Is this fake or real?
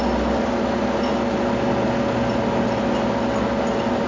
real